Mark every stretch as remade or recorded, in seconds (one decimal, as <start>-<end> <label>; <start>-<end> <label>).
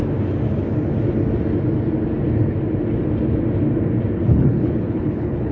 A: 0.0-4.2 recorded; 4.2-5.5 remade